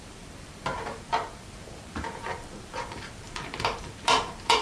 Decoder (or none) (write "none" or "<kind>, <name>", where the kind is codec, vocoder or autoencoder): vocoder, BigVGAN v2